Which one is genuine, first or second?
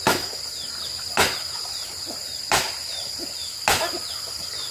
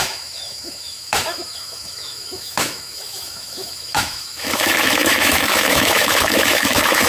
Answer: first